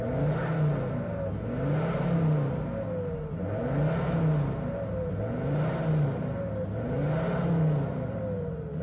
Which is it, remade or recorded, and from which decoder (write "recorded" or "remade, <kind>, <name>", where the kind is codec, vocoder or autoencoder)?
recorded